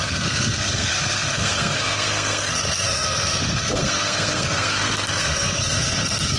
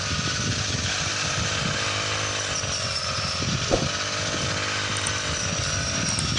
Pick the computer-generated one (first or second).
first